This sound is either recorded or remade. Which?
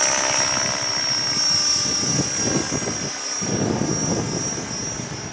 recorded